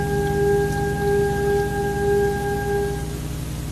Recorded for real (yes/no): yes